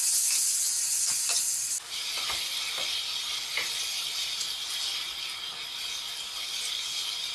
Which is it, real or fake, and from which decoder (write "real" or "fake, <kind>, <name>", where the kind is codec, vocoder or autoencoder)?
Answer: real